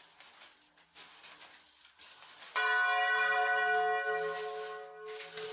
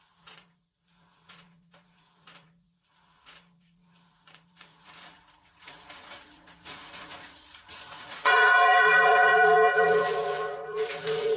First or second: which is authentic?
first